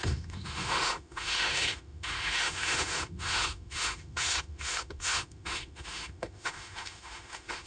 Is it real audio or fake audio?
fake